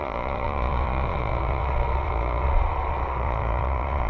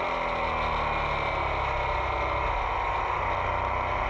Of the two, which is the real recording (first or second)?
second